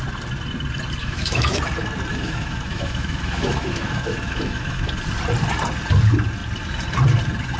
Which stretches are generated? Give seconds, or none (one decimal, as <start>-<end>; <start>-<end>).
1.0-1.6; 2.1-4.9